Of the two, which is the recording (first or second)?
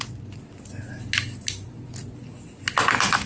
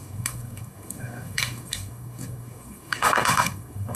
first